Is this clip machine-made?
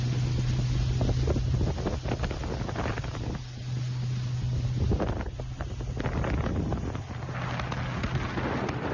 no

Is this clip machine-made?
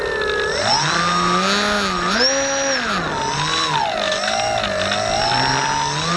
no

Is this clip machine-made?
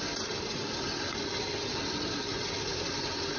no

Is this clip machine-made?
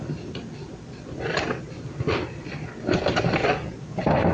no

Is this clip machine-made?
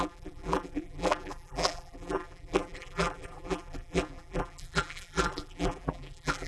yes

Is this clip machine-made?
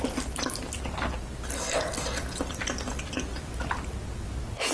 no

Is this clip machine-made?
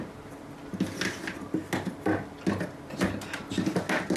no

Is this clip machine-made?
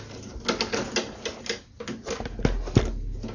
no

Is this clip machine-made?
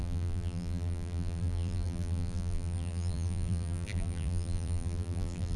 yes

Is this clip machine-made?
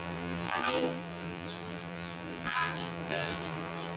yes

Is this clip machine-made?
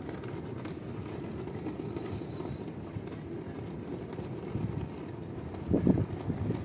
yes